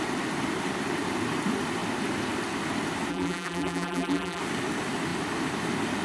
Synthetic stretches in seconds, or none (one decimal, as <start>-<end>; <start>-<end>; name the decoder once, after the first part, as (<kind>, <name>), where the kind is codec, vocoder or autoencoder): 3.1-4.4 (vocoder, BigVGAN v2)